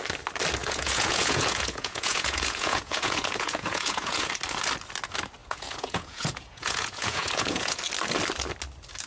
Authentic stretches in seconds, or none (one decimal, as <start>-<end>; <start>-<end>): 0.0-0.6; 4.3-5.4; 7.8-9.1